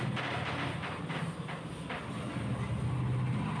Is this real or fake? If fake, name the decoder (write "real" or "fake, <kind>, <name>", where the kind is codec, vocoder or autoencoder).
real